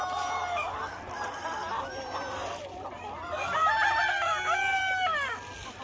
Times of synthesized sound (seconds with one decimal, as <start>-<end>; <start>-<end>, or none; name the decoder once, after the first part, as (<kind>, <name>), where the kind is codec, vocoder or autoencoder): none